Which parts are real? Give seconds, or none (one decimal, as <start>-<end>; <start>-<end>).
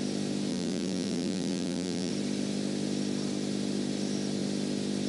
0.0-0.5; 2.1-5.1